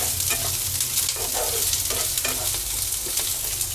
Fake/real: real